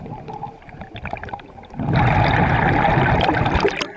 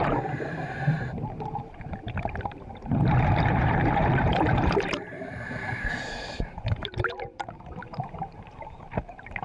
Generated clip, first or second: second